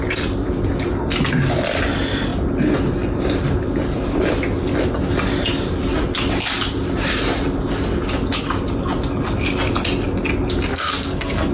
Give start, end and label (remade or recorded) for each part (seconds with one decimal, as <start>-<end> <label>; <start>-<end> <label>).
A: 0.0-10.7 recorded; 10.7-11.5 remade